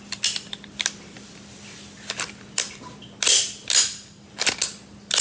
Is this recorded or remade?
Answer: recorded